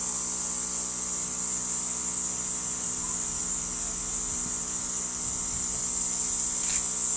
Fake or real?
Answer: real